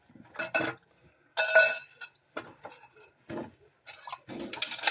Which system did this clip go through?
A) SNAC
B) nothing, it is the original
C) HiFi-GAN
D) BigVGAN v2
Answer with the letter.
B